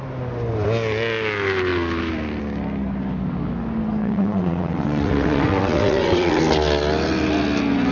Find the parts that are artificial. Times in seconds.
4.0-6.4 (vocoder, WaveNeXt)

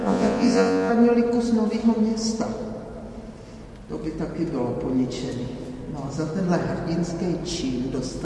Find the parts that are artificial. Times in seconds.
0.0-0.9 (vocoder, Vocos)

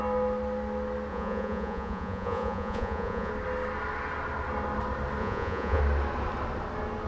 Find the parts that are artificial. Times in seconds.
1.1-3.3 (vocoder, Vocos); 5.2-5.8

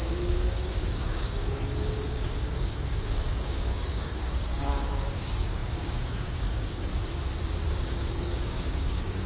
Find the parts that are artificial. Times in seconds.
0.0-6.9 (codec, DAC); 7.7-9.3

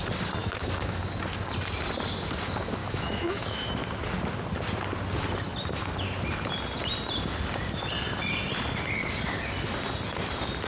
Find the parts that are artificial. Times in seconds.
0.4-1.0 (autoencoder, DAC-VAE); 2.8-3.7

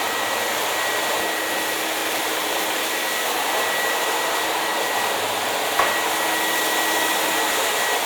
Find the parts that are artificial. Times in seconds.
2.0-2.9 (vocoder, BigVGAN v2)

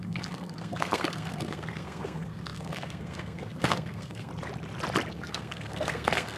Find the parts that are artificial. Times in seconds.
0.0-4.3 (codec, SNAC); 5.1-6.4